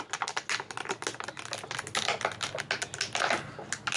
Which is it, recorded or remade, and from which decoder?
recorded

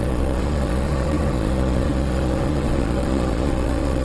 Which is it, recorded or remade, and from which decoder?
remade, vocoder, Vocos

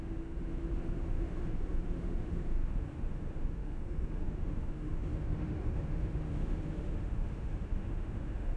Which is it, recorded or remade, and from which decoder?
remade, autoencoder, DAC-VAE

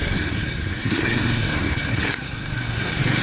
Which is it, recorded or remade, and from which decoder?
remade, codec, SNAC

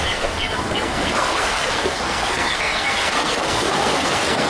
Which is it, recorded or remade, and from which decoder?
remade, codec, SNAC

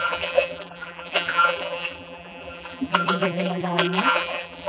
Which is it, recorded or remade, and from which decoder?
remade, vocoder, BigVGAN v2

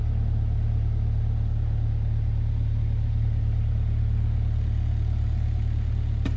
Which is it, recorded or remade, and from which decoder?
recorded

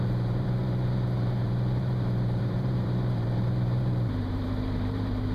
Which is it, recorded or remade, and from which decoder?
remade, vocoder, BigVGAN v2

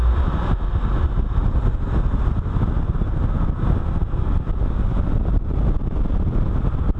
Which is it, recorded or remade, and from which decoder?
recorded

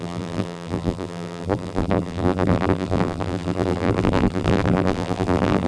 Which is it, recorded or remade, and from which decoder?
remade, vocoder, BigVGAN v2